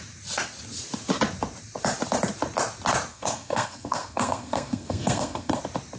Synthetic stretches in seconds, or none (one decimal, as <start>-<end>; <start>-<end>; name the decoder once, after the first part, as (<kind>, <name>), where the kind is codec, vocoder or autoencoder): 3.1-5.6 (codec, SNAC)